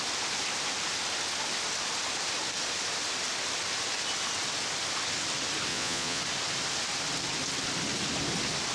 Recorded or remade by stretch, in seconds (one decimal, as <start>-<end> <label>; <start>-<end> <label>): 0.0-5.7 recorded; 5.7-6.2 remade; 6.2-8.7 recorded